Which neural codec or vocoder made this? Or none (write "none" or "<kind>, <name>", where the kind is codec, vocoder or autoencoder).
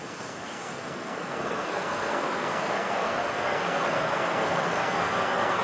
codec, SNAC